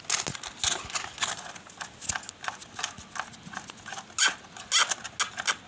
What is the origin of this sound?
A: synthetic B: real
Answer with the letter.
B